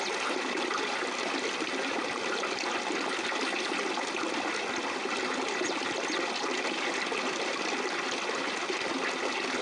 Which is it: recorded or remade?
recorded